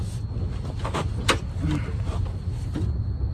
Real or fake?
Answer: real